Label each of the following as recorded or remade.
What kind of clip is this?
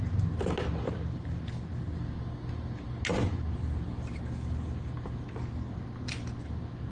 recorded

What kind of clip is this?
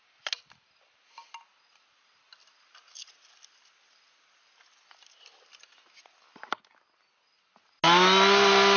recorded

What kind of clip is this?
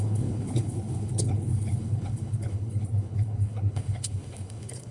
remade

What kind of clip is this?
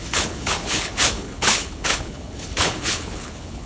remade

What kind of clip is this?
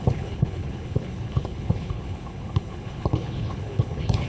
remade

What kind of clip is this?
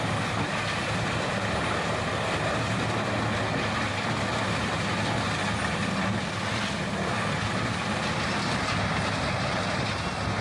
recorded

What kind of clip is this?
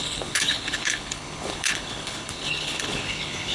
remade